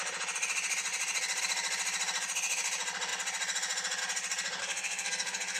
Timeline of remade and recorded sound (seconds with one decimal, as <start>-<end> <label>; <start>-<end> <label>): 0.0-4.6 recorded; 4.6-5.6 remade